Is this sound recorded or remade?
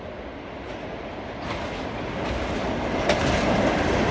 recorded